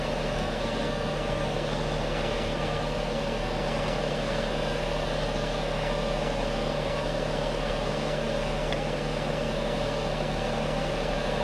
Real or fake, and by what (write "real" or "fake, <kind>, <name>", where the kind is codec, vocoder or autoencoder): fake, codec, SNAC